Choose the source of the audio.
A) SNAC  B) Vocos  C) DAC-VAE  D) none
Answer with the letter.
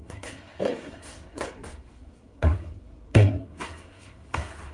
A